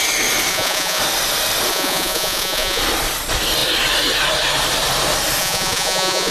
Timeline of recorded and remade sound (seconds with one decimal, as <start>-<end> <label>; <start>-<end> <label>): 0.0-0.5 recorded; 0.5-1.0 remade; 1.0-1.7 recorded; 1.7-2.8 remade; 2.8-5.4 recorded; 5.4-6.3 remade